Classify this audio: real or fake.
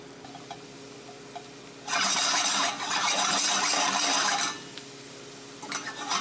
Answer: real